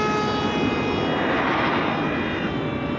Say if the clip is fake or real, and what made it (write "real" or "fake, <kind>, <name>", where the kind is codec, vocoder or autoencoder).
real